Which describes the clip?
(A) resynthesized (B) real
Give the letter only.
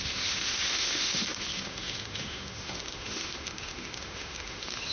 A